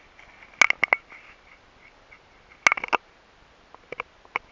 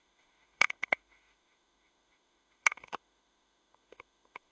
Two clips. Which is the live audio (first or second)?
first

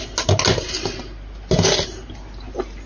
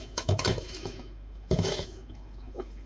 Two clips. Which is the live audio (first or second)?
first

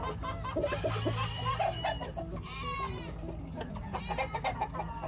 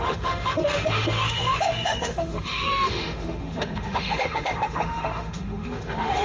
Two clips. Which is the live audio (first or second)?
first